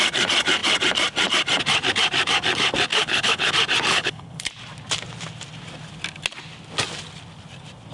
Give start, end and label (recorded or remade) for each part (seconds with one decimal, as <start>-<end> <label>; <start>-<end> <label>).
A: 0.0-2.9 recorded; 2.9-3.5 remade; 3.5-3.9 recorded; 3.9-4.5 remade; 4.5-7.9 recorded